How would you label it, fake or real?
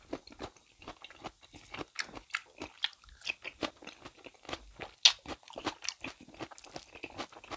real